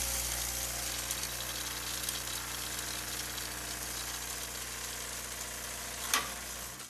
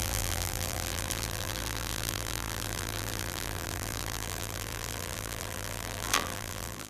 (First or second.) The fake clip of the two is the second